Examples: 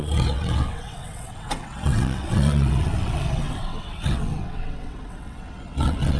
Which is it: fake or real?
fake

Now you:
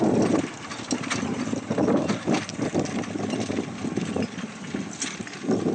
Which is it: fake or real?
real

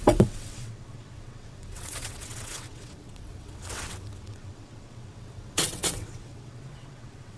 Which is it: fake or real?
fake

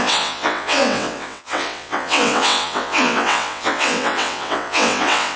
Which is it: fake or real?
fake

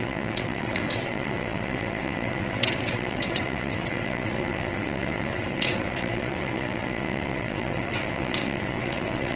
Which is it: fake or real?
fake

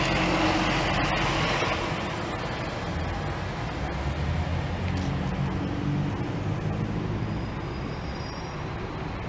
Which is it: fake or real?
real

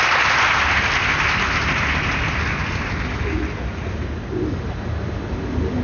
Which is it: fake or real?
real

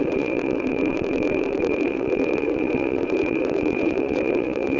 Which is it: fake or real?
fake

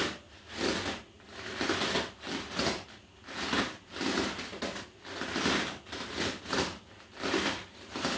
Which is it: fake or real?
real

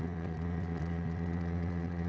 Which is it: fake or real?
fake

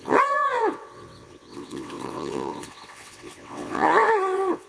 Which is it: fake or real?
fake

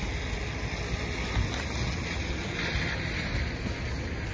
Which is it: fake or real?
real